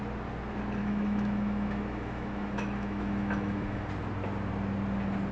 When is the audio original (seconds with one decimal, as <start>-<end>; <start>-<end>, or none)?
0.0-0.8; 3.9-5.3